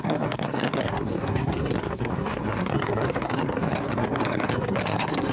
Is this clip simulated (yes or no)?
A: yes